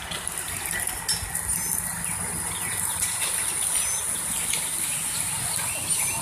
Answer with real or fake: real